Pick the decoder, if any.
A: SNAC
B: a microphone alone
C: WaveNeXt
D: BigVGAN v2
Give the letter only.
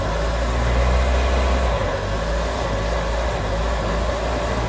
B